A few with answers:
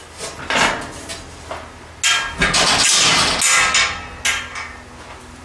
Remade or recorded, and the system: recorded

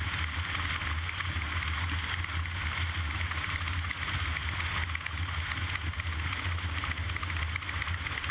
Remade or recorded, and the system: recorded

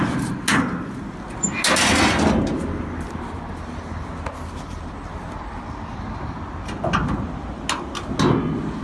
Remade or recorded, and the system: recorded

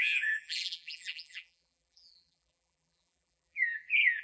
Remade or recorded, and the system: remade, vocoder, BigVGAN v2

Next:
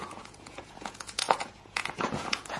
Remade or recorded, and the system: remade, vocoder, Vocos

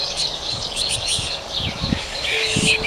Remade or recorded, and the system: remade, codec, DAC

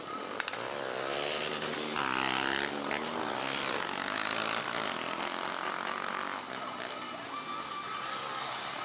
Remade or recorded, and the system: recorded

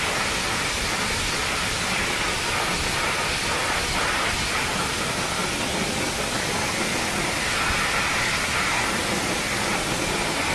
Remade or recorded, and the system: recorded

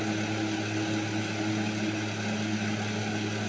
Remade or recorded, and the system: recorded